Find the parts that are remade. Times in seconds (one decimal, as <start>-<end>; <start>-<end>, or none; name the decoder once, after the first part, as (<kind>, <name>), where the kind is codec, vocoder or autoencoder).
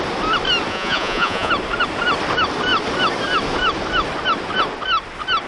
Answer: 0.7-1.5 (vocoder, Vocos)